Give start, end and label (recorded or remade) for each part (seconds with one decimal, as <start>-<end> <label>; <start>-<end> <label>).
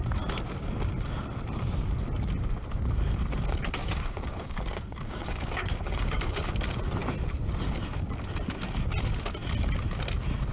0.0-3.8 recorded; 3.8-6.4 remade; 6.4-10.5 recorded